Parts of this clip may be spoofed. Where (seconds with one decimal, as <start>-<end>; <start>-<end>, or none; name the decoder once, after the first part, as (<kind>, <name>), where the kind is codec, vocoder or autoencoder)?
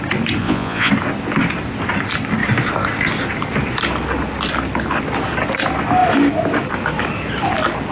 0.4-0.9 (vocoder, Vocos)